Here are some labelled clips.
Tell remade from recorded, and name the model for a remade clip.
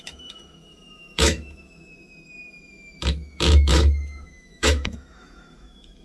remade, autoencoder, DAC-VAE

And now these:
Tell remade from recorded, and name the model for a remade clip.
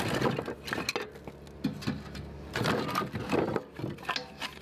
recorded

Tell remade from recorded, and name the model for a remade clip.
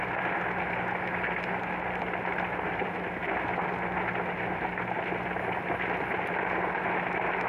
recorded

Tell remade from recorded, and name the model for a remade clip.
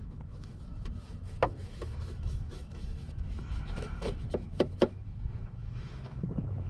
remade, autoencoder, DAC-VAE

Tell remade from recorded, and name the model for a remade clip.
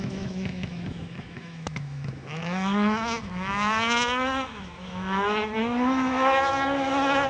remade, autoencoder, DAC-VAE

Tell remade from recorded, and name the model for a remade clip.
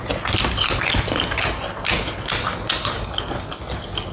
recorded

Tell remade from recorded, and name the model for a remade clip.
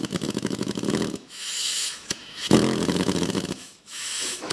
remade, autoencoder, DAC-VAE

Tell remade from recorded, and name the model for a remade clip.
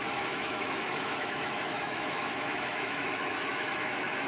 remade, autoencoder, DAC-VAE